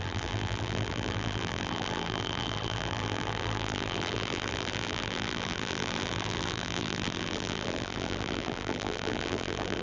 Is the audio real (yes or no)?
no